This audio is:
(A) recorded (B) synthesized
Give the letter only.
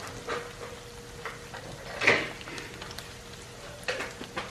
A